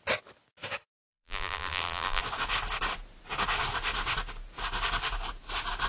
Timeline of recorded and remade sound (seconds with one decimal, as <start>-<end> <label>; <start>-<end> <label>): 0.0-1.1 recorded; 1.1-2.2 remade; 2.2-5.9 recorded